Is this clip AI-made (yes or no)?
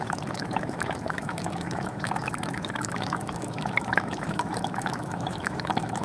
yes